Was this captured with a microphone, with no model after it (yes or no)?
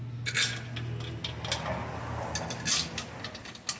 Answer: yes